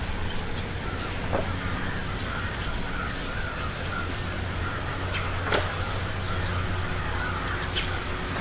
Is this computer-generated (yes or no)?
no